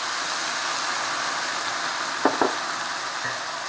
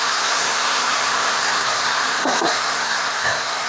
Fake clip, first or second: second